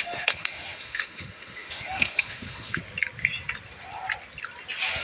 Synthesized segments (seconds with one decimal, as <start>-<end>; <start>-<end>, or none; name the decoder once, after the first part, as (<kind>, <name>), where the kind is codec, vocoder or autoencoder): 0.0-2.8 (autoencoder, DAC-VAE)